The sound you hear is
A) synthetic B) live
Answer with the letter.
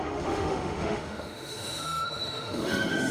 A